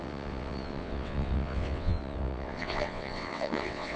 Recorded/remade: remade